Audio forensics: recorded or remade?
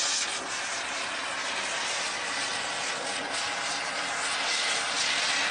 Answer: recorded